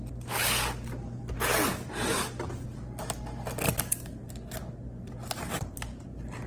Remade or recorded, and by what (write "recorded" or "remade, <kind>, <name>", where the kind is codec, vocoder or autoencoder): recorded